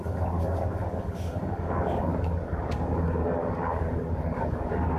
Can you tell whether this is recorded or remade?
remade